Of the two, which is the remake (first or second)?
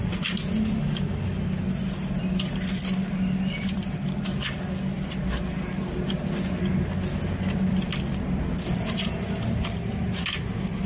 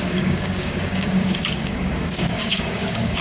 second